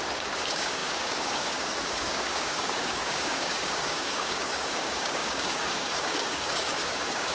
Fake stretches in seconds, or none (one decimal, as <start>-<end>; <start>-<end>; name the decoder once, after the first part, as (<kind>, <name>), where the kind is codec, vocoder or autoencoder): 0.0-7.3 (codec, DAC)